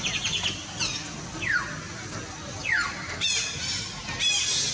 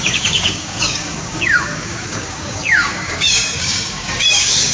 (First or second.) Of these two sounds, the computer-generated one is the second